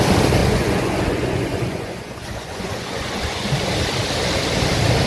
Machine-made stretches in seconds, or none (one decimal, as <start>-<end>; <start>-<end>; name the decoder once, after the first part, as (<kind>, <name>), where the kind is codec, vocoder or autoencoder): 0.4-3.5 (vocoder, Vocos)